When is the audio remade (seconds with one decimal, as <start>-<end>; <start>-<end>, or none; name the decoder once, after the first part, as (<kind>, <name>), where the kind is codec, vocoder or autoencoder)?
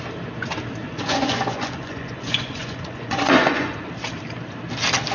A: 0.8-3.9 (vocoder, Vocos)